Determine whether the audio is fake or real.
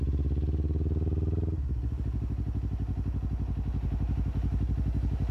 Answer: real